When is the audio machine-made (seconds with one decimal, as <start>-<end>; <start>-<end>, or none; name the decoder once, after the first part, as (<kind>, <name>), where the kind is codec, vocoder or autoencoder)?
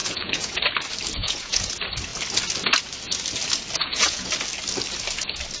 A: 0.0-0.5 (vocoder, Vocos); 1.2-1.7; 3.8-4.3